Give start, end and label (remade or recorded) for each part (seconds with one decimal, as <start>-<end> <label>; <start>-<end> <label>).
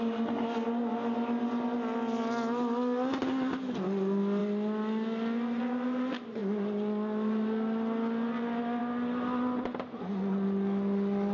0.0-11.3 recorded